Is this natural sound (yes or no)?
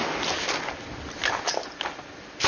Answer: yes